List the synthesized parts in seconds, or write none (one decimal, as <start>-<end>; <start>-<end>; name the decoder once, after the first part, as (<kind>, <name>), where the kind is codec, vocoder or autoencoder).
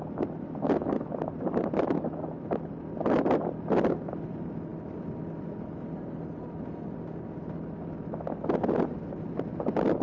none